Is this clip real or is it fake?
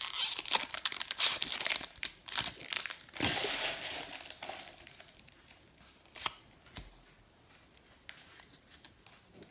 real